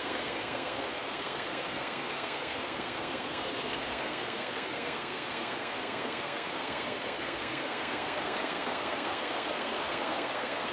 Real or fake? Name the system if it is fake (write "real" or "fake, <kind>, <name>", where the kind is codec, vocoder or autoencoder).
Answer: fake, codec, SNAC